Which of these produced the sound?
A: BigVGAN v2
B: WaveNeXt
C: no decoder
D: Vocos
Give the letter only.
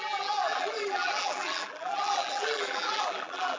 A